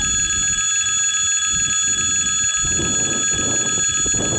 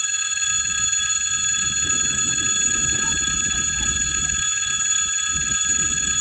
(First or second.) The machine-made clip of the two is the second